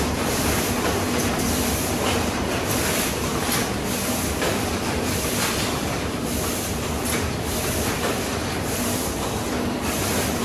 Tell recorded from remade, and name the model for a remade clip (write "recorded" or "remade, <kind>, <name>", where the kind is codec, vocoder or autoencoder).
remade, vocoder, BigVGAN v2